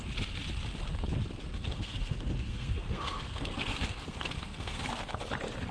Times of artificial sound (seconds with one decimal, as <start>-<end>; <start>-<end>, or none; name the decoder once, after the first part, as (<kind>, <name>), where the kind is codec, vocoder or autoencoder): 1.5-4.9 (codec, SNAC)